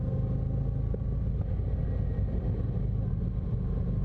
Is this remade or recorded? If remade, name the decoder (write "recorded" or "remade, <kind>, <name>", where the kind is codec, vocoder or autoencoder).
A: recorded